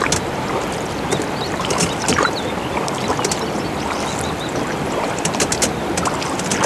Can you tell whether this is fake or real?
real